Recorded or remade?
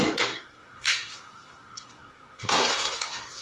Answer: remade